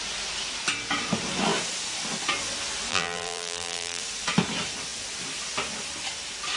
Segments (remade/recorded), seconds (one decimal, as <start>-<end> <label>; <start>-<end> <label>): 0.0-2.9 recorded; 2.9-4.0 remade; 4.0-6.6 recorded